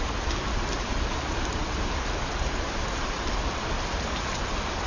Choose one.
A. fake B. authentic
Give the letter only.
A